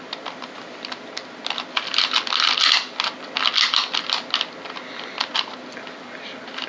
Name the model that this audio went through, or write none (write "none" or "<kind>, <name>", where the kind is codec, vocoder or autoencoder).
none